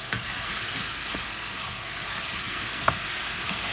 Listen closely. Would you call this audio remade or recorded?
remade